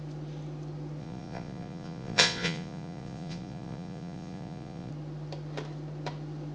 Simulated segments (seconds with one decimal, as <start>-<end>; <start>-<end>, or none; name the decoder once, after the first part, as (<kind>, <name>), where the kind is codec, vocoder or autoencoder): 1.0-4.9 (vocoder, Vocos)